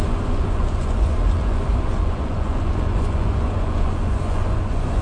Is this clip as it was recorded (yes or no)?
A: no